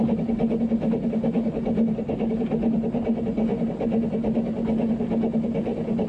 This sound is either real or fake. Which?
real